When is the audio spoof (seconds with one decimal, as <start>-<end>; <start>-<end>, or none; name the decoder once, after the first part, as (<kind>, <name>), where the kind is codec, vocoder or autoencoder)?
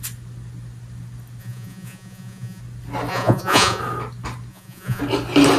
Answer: 1.4-2.6 (vocoder, Vocos); 3.1-3.8; 4.5-5.0